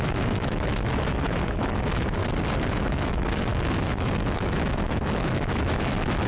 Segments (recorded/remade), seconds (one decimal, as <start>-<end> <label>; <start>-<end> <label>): 0.0-2.2 remade; 2.2-2.7 recorded; 2.7-6.3 remade